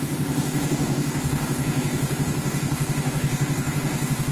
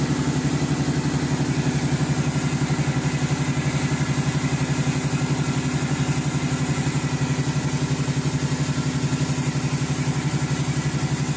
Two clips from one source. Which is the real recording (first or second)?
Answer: second